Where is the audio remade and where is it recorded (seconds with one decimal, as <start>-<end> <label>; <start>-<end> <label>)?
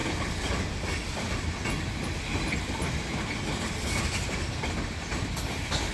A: 0.0-5.9 recorded